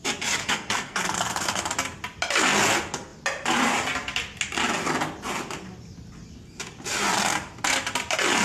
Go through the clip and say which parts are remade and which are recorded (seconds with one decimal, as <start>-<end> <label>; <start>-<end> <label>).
0.0-0.4 recorded; 0.4-1.6 remade; 1.6-8.4 recorded